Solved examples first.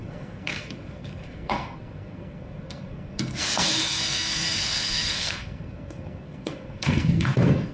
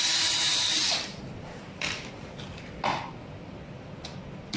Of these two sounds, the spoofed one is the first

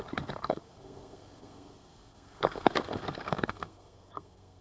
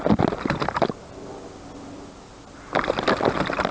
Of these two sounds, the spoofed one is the first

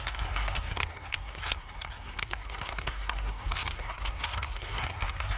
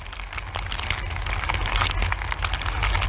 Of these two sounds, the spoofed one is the first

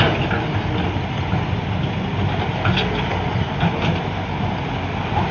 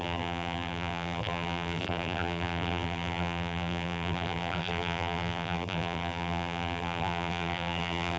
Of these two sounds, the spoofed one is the second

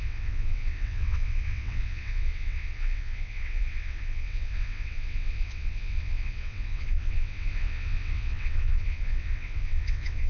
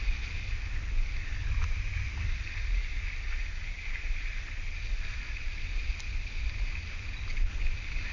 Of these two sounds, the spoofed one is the first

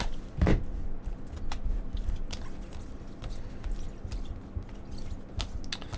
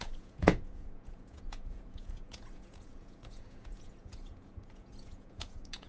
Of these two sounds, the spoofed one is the second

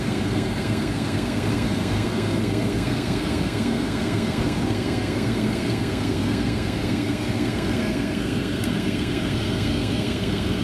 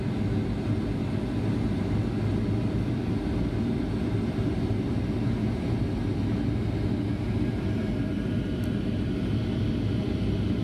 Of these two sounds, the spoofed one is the first